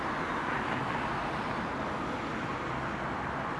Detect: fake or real real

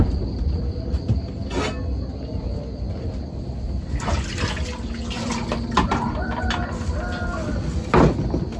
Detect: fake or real real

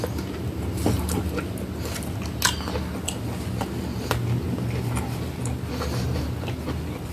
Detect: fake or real real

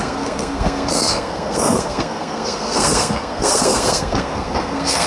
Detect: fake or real fake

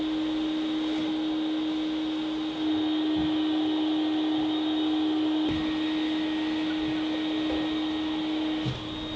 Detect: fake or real real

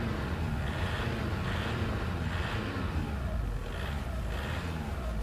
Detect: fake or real real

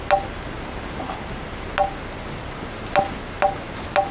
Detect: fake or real real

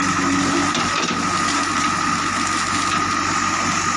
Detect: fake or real real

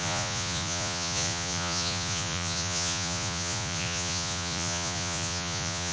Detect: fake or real fake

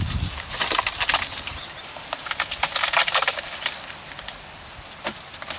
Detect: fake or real real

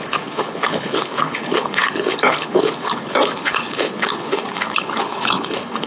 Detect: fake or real fake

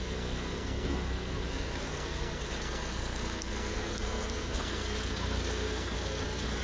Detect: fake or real fake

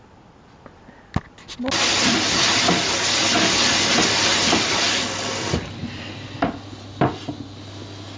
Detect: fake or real real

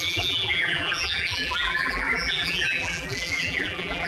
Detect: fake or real fake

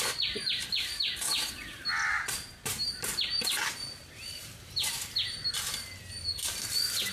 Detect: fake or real real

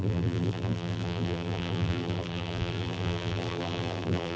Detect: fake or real fake